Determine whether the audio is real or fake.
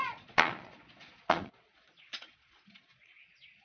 fake